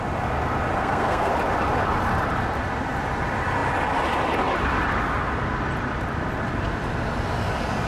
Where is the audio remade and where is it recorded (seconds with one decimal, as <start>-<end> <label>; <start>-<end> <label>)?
0.0-0.7 recorded; 0.7-1.3 remade; 1.3-7.9 recorded